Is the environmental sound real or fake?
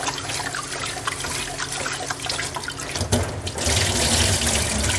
real